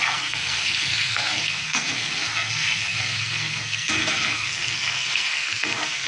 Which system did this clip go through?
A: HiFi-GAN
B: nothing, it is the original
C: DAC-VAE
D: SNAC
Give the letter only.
D